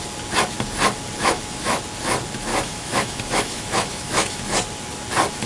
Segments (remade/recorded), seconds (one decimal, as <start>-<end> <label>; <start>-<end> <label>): 0.0-1.2 recorded; 1.2-1.8 remade; 1.8-2.5 recorded; 2.5-4.4 remade; 4.4-5.5 recorded